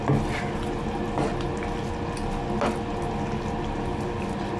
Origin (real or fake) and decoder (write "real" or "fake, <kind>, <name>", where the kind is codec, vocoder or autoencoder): real